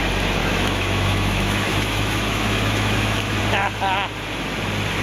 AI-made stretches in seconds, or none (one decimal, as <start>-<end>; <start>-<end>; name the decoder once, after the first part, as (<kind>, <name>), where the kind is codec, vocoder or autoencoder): 0.4-3.4 (autoencoder, DAC-VAE)